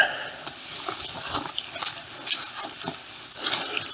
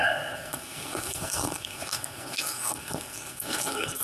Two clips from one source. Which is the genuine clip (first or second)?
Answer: first